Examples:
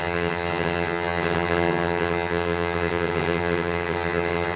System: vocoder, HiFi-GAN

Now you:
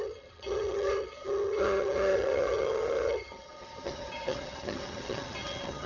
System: vocoder, HiFi-GAN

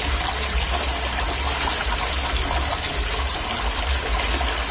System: none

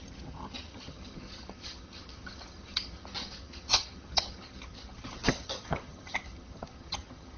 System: vocoder, HiFi-GAN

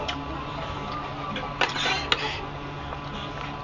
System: none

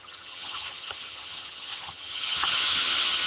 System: vocoder, HiFi-GAN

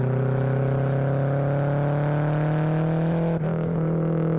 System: none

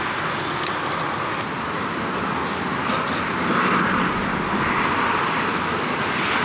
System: none